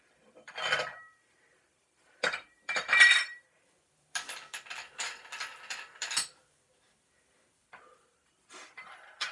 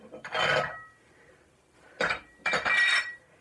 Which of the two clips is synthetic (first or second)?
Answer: first